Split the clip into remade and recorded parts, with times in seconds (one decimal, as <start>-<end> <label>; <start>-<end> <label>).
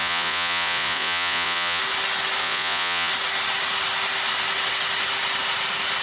0.0-1.8 remade; 1.8-2.4 recorded; 2.4-3.1 remade; 3.1-6.0 recorded